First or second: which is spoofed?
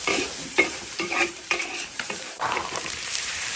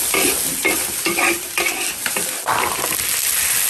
first